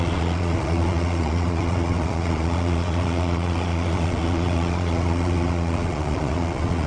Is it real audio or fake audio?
fake